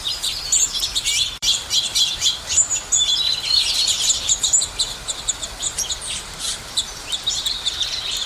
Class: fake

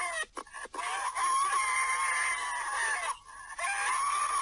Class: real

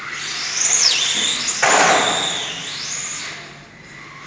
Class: real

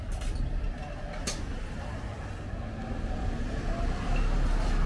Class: real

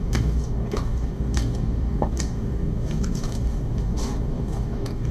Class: fake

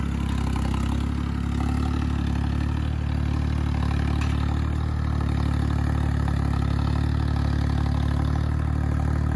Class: real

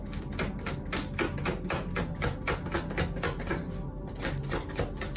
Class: real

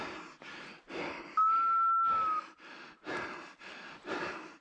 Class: real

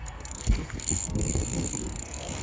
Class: fake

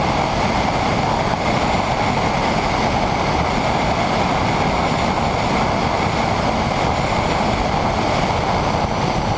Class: real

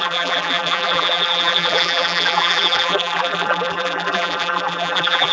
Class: fake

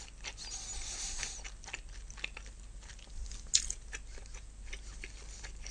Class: real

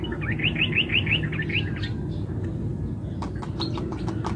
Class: real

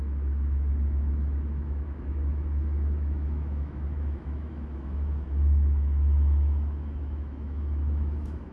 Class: fake